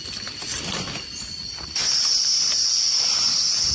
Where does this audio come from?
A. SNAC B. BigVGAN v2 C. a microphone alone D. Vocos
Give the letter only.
C